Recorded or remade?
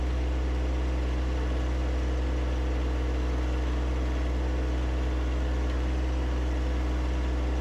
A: recorded